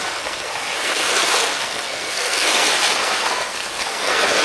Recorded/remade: remade